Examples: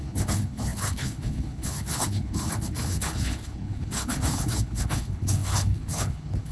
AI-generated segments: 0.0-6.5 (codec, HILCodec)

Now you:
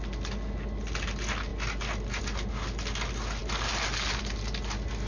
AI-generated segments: none

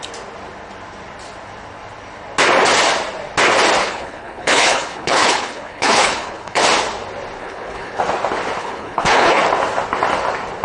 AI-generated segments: 3.8-6.6 (codec, HILCodec); 7.4-8.0; 8.6-9.4